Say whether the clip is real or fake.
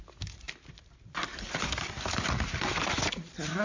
real